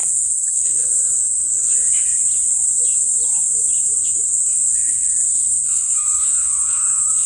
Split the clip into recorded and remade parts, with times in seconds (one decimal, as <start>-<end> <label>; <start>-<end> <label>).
0.0-1.8 remade; 1.8-4.0 recorded; 4.0-7.3 remade

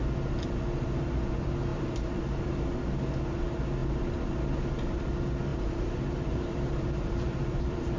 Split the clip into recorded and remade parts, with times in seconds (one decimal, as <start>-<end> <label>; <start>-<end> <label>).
0.0-1.7 recorded; 1.7-2.2 remade; 2.2-5.5 recorded; 5.5-8.0 remade

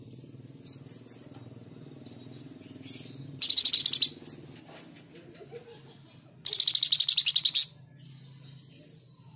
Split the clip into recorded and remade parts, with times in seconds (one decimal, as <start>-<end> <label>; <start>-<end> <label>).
0.0-3.2 recorded; 3.2-3.8 remade; 3.8-9.4 recorded

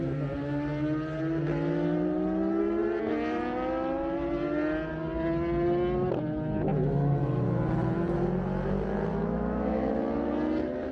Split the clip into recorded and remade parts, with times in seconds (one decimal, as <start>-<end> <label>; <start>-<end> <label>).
0.0-9.1 recorded; 9.1-9.9 remade; 9.9-10.9 recorded

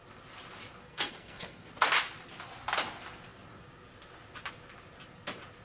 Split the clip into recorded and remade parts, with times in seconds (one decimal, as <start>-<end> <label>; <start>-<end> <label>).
0.0-0.8 recorded; 0.8-1.7 remade; 1.7-5.6 recorded

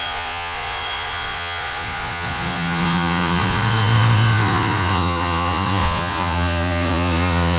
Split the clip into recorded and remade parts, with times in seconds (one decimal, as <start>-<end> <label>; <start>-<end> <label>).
0.0-7.6 remade